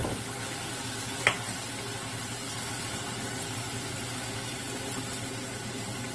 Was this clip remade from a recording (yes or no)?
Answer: no